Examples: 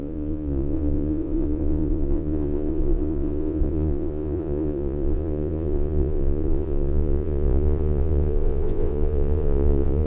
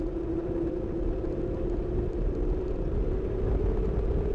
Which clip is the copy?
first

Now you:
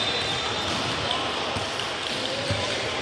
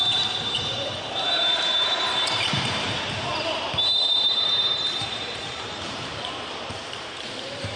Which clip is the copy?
second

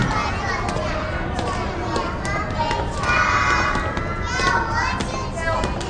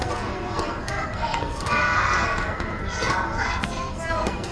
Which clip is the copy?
second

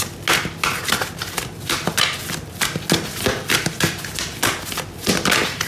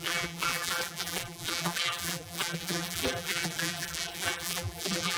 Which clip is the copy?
second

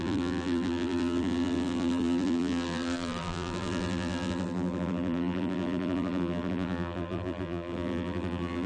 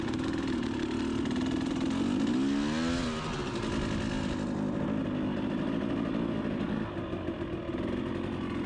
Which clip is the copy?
first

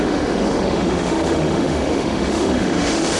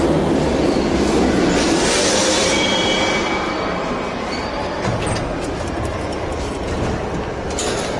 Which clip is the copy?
first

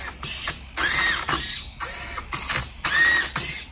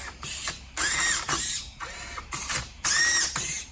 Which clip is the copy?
second